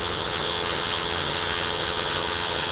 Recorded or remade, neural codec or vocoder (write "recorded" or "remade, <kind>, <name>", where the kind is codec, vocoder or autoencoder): remade, vocoder, HiFi-GAN